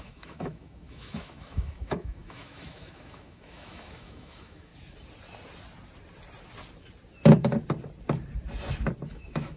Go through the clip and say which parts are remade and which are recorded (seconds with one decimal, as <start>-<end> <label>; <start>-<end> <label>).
0.0-4.7 remade; 4.7-9.1 recorded; 9.1-9.6 remade